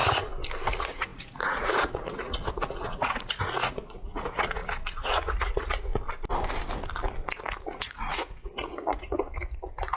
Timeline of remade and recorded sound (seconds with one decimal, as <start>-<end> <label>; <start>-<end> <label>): 0.0-0.7 recorded; 0.7-5.9 remade; 5.9-7.6 recorded; 7.6-10.0 remade